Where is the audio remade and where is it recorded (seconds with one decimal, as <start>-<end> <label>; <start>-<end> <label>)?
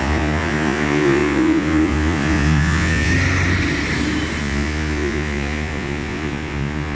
0.0-3.1 remade; 3.1-4.4 recorded; 4.4-6.9 remade